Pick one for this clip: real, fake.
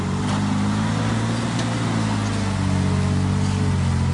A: real